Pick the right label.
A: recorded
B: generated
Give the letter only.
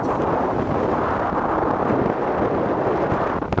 A